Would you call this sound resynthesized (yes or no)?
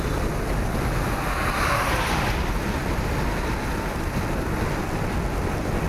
no